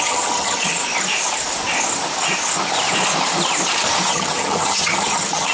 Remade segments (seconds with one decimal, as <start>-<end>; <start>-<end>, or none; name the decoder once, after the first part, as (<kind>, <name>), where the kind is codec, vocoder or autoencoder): 0.0-0.8 (vocoder, HiFi-GAN); 4.1-5.5